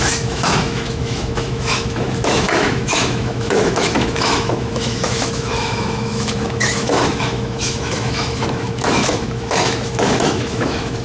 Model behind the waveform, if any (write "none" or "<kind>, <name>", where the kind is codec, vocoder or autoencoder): autoencoder, DAC-VAE